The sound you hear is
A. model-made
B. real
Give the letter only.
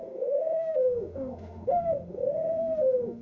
A